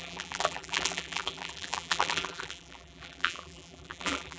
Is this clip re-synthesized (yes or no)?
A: yes